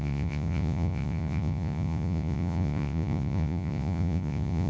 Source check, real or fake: fake